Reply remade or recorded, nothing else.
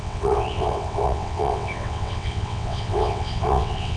remade